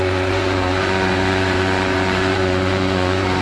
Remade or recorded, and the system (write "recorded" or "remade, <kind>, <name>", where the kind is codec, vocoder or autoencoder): remade, vocoder, Vocos